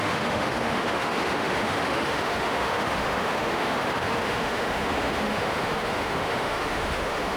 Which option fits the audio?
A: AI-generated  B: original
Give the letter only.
A